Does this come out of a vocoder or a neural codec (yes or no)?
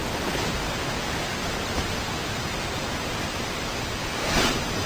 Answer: no